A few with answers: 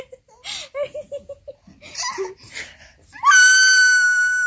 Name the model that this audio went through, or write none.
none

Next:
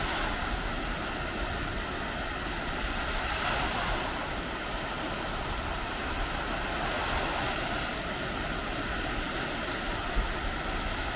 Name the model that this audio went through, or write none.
none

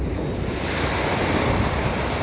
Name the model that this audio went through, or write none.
none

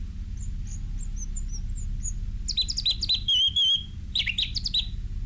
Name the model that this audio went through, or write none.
none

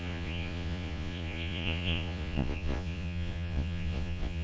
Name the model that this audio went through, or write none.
vocoder, Vocos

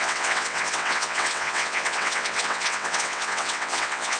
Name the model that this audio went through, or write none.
vocoder, WaveNeXt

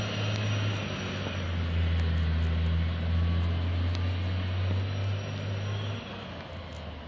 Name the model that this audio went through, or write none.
none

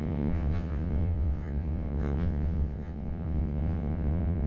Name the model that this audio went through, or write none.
vocoder, WaveNeXt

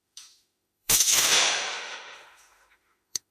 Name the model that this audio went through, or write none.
autoencoder, DAC-VAE